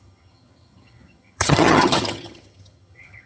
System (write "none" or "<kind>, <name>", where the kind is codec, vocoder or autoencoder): vocoder, HiFi-GAN